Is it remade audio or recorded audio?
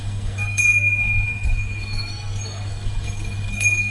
remade